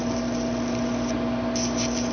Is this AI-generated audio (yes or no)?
no